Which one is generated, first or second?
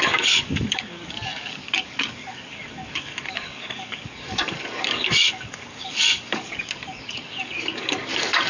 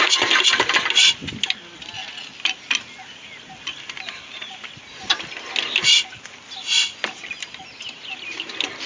first